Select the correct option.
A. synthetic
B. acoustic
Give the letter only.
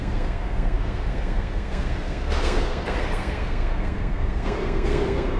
A